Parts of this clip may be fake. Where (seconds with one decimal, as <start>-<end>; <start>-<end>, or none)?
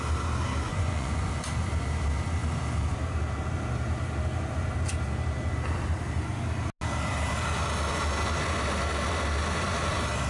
0.7-1.3